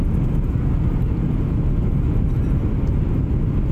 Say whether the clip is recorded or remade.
recorded